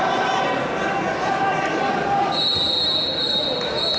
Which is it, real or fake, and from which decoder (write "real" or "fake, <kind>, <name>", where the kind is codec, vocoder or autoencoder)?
real